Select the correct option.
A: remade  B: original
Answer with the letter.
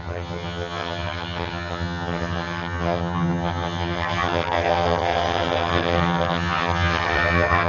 A